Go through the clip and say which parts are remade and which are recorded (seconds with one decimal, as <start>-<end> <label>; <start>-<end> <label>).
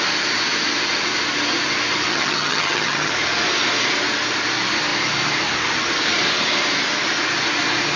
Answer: 0.0-2.1 recorded; 2.1-3.1 remade; 3.1-8.0 recorded